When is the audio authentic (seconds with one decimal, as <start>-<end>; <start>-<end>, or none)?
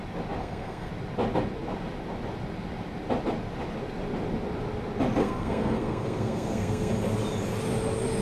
0.0-0.4; 0.9-5.2; 6.9-8.2